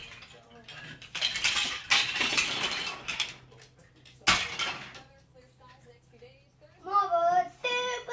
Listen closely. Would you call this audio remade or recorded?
recorded